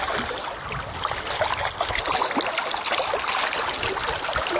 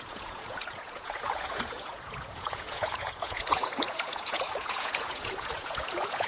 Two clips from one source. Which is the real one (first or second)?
first